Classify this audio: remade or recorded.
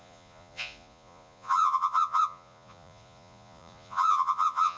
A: remade